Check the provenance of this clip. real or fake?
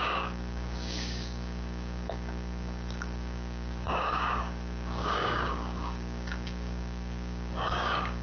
fake